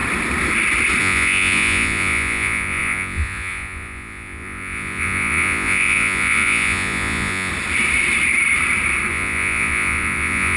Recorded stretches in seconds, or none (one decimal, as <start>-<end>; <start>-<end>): 0.0-1.0; 7.5-9.1